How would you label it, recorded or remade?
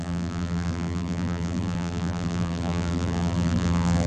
remade